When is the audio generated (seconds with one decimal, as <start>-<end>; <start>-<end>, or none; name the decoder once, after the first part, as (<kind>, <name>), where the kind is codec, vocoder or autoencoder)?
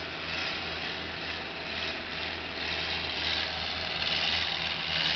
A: none